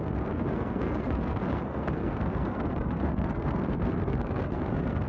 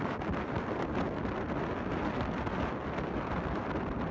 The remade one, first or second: first